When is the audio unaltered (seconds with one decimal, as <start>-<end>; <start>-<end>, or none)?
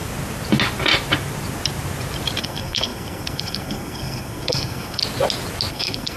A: 0.0-2.4; 5.0-5.7